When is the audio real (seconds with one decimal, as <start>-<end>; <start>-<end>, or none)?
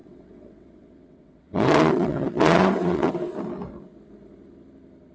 3.1-5.1